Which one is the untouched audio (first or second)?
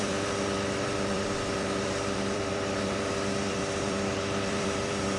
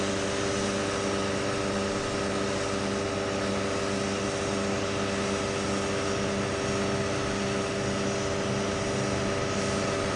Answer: second